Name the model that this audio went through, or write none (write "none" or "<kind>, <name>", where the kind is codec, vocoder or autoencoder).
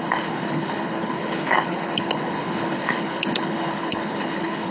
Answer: codec, HILCodec